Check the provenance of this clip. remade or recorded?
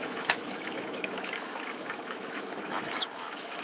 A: remade